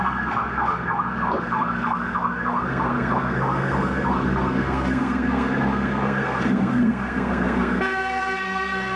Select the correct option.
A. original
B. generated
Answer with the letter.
B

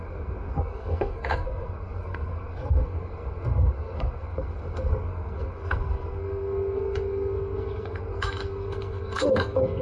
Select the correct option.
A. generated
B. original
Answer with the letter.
A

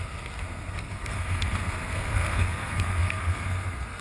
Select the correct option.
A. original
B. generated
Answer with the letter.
B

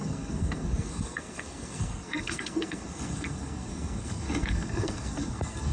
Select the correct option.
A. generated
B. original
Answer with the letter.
A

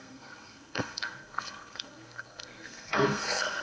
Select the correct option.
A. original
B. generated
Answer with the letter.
B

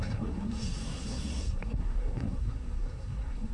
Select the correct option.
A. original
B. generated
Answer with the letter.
B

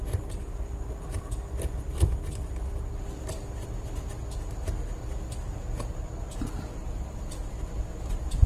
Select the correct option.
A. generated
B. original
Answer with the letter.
B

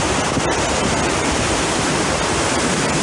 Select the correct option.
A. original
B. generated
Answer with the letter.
A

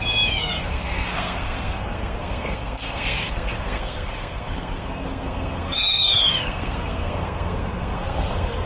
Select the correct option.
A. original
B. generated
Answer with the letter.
B